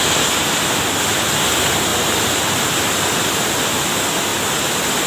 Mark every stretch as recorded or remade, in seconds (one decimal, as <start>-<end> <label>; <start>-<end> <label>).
0.0-1.9 recorded; 1.9-3.5 remade; 3.5-5.1 recorded